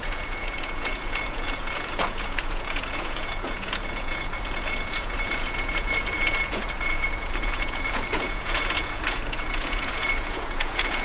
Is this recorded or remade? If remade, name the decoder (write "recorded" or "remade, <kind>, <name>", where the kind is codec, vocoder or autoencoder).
remade, vocoder, Vocos